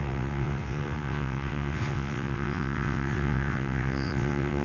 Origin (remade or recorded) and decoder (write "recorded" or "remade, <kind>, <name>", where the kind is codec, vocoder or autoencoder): remade, vocoder, WaveNeXt